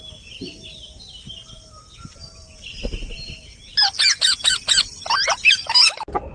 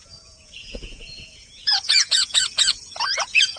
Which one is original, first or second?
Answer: first